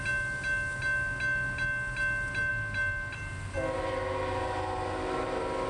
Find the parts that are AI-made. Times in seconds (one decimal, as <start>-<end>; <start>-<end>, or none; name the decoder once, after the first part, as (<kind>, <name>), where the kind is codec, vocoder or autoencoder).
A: none